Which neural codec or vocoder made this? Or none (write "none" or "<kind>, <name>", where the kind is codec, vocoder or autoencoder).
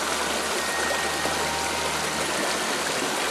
none